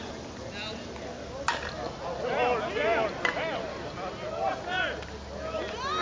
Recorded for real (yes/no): yes